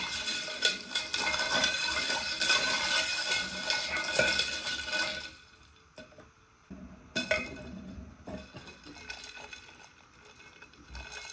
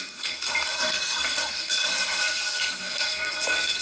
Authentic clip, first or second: first